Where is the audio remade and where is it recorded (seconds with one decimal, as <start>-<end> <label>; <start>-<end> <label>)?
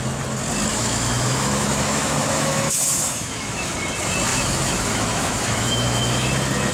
0.0-0.7 recorded; 0.7-3.7 remade; 3.7-4.3 recorded; 4.3-6.3 remade; 6.3-6.7 recorded